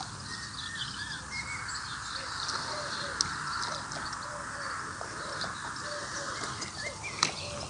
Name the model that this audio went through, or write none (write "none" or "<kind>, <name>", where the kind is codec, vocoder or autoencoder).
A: none